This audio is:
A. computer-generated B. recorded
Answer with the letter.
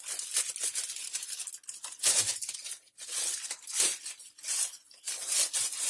B